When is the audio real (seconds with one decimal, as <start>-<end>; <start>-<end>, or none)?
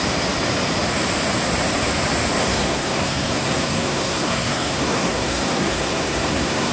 0.0-2.4